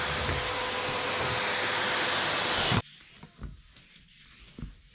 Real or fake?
real